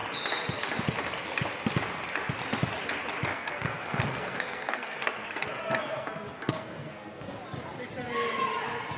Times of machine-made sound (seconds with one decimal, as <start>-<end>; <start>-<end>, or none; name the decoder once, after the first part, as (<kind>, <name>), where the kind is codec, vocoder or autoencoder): 3.3-7.4 (codec, SNAC)